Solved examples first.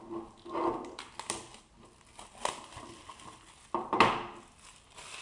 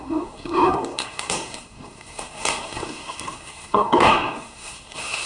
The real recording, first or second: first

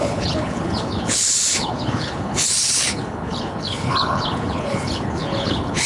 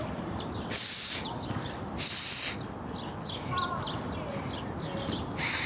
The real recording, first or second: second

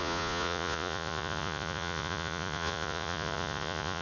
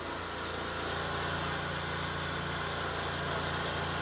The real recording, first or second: second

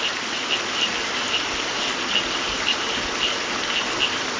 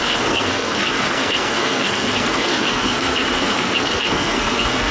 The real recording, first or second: first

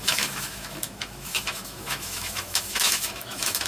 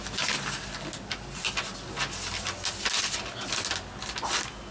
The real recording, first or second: second